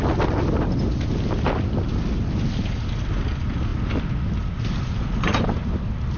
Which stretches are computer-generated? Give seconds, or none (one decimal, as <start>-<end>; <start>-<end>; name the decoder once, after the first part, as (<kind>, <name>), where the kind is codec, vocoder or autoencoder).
none